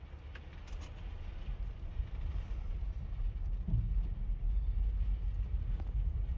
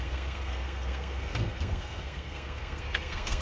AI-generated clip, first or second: second